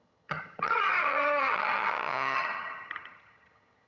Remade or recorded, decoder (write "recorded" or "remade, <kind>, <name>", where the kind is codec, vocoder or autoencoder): remade, vocoder, HiFi-GAN